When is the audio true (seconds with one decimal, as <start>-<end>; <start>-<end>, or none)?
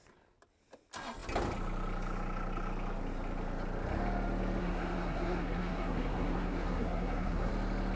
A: 0.0-4.6; 7.5-8.0